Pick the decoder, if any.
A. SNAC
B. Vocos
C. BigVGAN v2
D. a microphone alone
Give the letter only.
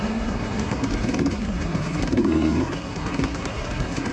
A